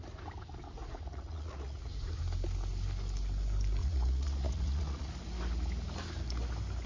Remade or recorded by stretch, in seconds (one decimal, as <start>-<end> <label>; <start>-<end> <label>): 0.0-0.8 recorded; 0.8-2.2 remade; 2.2-3.8 recorded; 3.8-5.1 remade; 5.1-6.9 recorded